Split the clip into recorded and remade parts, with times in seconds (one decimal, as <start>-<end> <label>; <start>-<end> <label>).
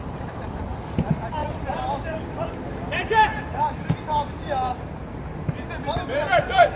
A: 0.0-6.8 recorded